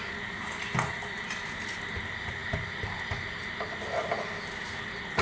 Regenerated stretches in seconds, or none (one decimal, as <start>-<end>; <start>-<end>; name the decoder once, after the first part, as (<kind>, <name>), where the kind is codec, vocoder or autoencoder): none